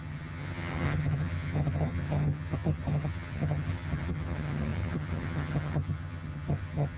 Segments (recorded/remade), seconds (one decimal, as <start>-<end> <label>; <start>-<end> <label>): 0.0-7.0 remade